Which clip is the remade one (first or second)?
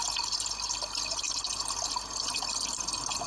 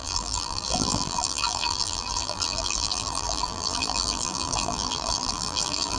second